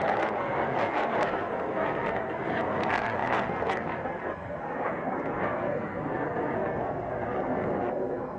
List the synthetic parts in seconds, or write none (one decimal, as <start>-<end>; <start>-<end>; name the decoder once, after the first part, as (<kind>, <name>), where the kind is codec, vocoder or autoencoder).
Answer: 0.0-8.4 (codec, SNAC)